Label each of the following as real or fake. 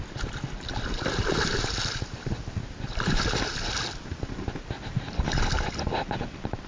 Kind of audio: real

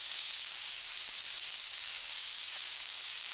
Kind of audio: fake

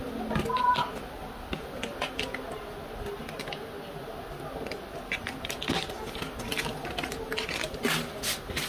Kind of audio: real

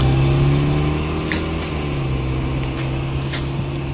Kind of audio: real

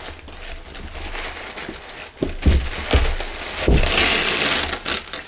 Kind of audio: real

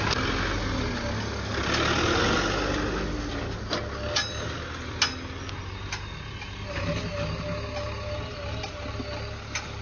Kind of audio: real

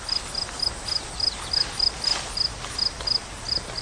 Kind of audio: real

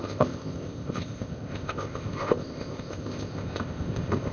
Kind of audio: fake